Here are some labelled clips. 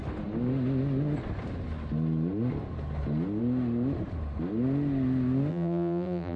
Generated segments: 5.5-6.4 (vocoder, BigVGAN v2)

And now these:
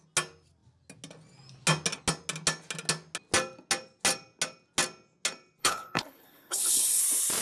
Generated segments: 5.6-7.0 (codec, HILCodec)

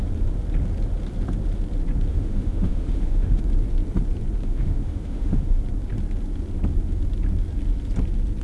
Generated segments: 2.1-3.4 (autoencoder, DAC-VAE); 4.4-5.6

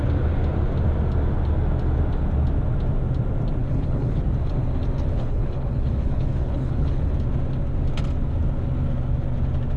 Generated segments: 3.6-4.2 (codec, HILCodec); 5.1-7.1

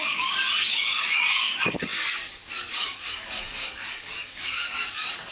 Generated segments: 0.0-5.3 (codec, DAC)

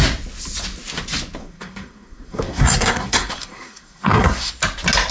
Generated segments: 1.4-4.5 (codec, SNAC)

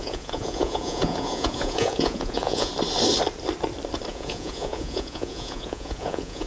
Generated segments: 0.0-2.7 (vocoder, Vocos); 4.1-6.5